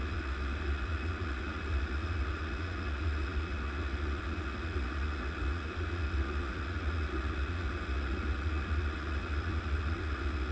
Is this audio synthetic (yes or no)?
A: yes